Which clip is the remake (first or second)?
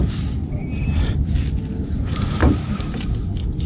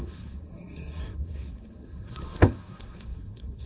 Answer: second